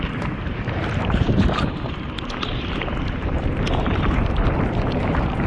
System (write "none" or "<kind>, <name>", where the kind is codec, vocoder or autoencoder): vocoder, BigVGAN v2